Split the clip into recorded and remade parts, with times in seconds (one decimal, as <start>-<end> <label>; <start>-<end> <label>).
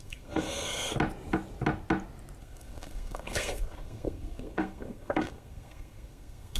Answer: 0.0-0.9 remade; 0.9-2.4 recorded; 2.4-6.6 remade